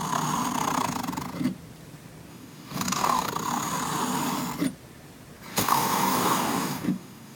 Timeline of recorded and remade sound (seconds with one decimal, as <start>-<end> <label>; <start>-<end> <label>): 0.0-2.3 recorded; 2.3-3.3 remade; 3.3-5.5 recorded; 5.5-7.4 remade

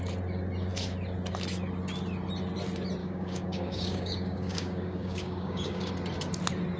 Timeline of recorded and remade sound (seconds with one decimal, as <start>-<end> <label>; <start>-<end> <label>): 0.0-3.0 recorded; 3.0-5.9 remade; 5.9-6.8 recorded

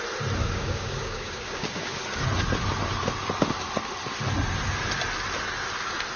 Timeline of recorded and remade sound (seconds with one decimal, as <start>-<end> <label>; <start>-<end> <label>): 0.0-0.4 recorded; 0.4-1.9 remade; 1.9-6.2 recorded

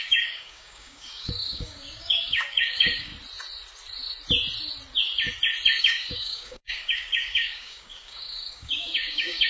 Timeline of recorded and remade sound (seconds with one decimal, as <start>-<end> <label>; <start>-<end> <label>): 0.0-3.1 remade; 3.1-5.8 recorded; 5.8-9.5 remade